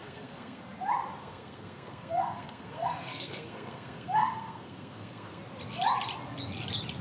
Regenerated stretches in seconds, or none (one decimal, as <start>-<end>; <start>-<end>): 0.0-0.6; 1.2-5.4